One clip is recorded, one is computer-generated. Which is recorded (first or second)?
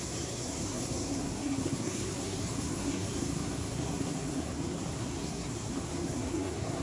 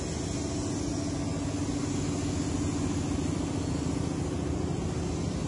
second